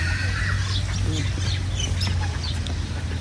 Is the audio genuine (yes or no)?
yes